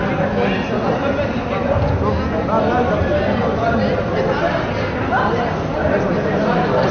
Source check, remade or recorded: recorded